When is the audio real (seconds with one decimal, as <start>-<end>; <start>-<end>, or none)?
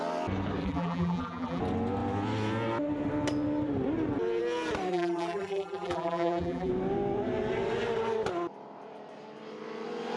0.0-0.6; 1.6-4.9; 6.7-10.2